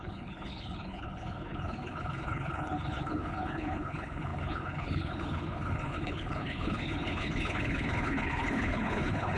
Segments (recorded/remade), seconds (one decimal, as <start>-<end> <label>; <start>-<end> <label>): 0.0-9.4 remade